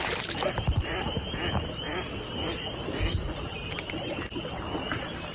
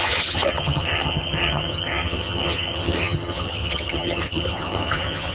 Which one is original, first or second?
first